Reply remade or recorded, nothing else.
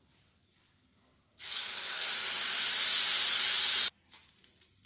recorded